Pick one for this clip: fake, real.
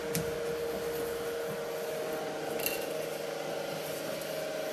real